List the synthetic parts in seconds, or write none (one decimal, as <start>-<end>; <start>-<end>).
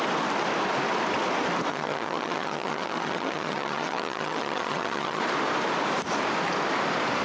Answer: 1.7-5.2